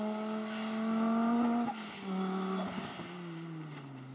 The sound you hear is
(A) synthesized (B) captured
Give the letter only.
B